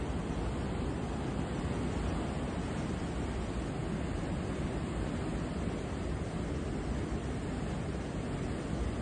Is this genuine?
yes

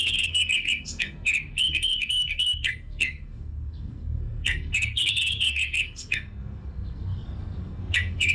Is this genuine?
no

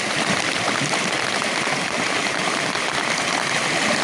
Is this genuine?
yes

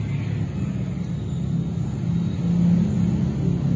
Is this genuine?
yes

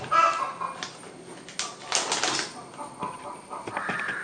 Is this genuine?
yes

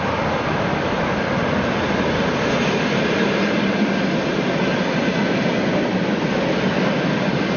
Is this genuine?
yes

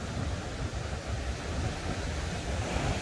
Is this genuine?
yes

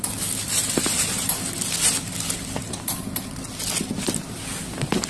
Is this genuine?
yes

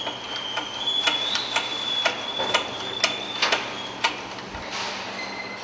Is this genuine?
yes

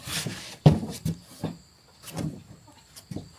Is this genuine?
no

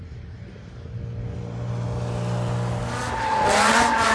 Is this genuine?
yes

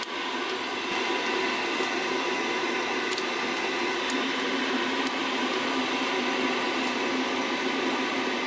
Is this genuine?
yes